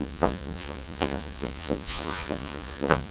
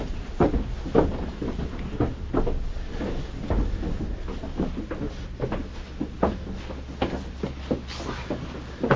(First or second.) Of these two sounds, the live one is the second